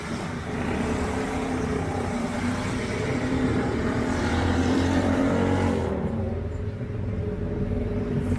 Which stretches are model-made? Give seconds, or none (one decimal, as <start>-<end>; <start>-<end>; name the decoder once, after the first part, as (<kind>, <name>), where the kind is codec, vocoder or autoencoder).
0.0-5.2 (vocoder, BigVGAN v2); 6.0-8.4